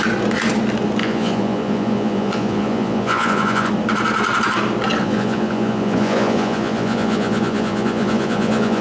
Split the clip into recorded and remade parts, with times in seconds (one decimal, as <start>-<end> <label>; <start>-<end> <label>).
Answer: 0.0-1.0 recorded; 1.0-3.7 remade; 3.7-5.0 recorded; 5.0-8.8 remade